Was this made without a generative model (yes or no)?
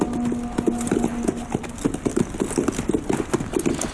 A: yes